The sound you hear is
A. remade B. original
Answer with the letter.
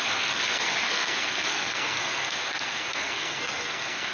A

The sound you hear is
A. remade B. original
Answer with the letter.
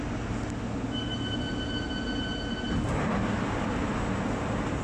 B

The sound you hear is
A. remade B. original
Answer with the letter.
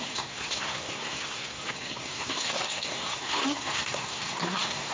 A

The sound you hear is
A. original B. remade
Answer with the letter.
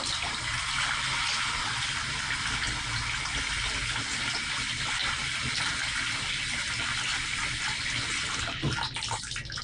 A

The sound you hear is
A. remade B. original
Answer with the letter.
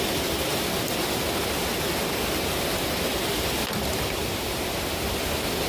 B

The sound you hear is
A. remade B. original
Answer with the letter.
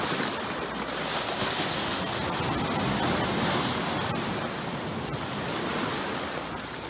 B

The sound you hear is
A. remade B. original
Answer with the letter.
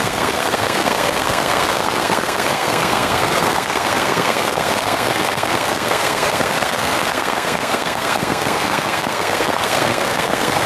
A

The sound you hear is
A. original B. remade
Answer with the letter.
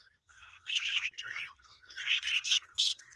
B